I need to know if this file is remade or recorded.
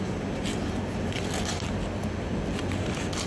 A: recorded